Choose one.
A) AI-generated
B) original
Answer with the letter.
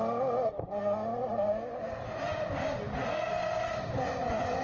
B